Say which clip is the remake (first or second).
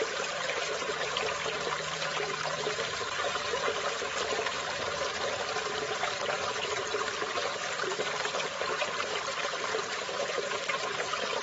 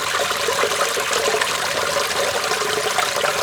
first